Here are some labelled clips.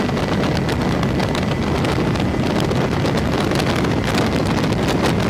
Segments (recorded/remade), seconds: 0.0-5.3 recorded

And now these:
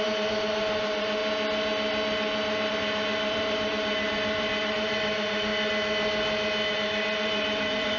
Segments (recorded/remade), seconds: 0.0-1.2 remade; 1.2-2.7 recorded; 2.7-5.5 remade; 5.5-6.7 recorded; 6.7-8.0 remade

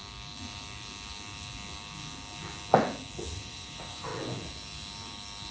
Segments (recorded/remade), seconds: 0.0-3.3 recorded; 3.3-4.1 remade; 4.1-5.5 recorded

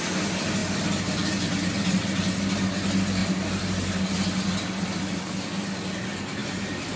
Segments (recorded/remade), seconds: 0.0-3.2 recorded; 3.2-4.0 remade; 4.0-6.4 recorded; 6.4-7.0 remade

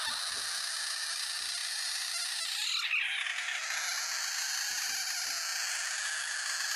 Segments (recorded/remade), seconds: 0.0-6.8 recorded